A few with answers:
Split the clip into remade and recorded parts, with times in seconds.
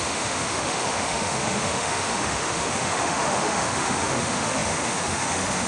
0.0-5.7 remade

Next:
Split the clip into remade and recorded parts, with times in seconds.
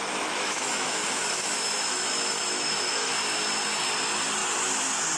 0.0-3.1 remade; 3.1-5.2 recorded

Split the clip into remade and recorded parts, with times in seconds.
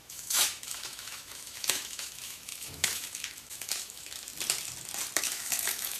0.0-4.3 remade; 4.3-5.2 recorded; 5.2-6.0 remade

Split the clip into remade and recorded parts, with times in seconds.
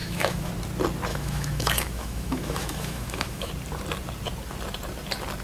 0.0-0.5 remade; 0.5-1.1 recorded; 1.1-3.5 remade; 3.5-5.4 recorded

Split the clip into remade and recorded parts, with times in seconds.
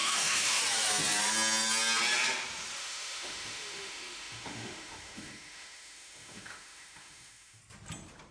0.0-0.6 remade; 0.6-2.8 recorded; 2.8-7.6 remade; 7.6-8.3 recorded